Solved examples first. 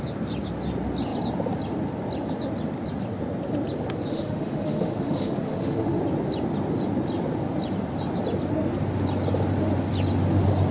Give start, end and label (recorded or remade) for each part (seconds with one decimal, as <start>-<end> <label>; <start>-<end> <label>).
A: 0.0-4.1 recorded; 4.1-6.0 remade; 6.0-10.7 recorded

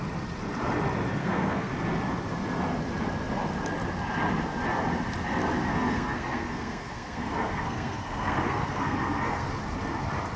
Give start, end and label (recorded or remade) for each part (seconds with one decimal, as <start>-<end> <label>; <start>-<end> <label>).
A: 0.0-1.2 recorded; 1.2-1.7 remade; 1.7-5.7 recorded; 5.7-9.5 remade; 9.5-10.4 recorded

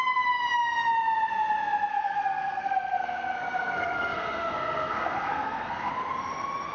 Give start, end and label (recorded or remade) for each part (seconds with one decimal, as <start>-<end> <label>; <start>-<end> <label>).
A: 0.0-1.9 recorded; 1.9-5.9 remade; 5.9-6.7 recorded

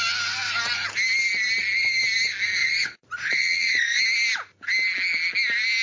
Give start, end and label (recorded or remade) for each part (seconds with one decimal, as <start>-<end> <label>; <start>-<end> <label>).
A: 0.0-2.6 recorded; 2.6-4.0 remade; 4.0-5.8 recorded

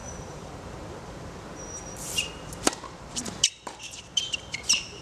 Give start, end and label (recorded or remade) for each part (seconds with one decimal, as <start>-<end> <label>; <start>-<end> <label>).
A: 0.0-5.0 remade